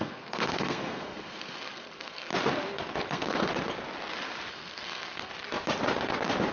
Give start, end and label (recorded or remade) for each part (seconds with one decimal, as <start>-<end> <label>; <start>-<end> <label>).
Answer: 0.0-2.3 remade; 2.3-3.1 recorded; 3.1-3.5 remade; 3.5-4.5 recorded; 4.5-5.3 remade; 5.3-6.5 recorded